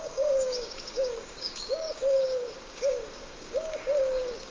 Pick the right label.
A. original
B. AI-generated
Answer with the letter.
B